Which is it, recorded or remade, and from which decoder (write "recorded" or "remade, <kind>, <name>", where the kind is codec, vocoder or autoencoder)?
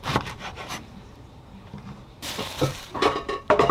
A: remade, vocoder, BigVGAN v2